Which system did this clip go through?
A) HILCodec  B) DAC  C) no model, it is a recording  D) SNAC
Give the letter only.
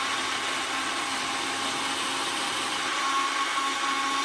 C